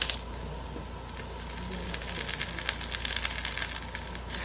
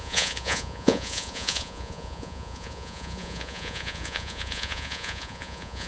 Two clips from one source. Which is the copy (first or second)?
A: second